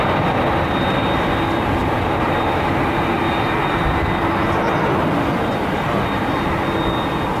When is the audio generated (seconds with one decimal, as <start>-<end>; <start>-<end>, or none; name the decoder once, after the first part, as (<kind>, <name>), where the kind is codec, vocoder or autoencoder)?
1.8-3.8 (vocoder, BigVGAN v2)